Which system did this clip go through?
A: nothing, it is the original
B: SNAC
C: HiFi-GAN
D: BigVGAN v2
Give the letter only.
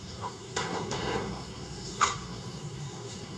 B